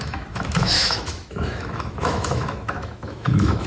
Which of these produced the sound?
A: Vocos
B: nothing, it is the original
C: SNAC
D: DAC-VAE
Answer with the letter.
D